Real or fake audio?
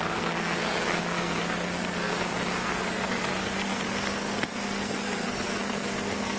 fake